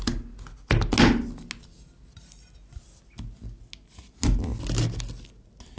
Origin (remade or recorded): recorded